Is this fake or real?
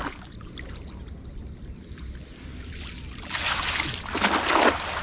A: real